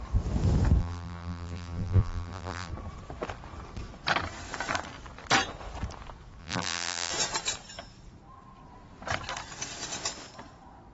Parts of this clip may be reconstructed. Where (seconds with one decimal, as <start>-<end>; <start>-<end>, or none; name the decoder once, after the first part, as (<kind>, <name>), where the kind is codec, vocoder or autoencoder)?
0.8-2.7 (vocoder, BigVGAN v2); 6.4-7.1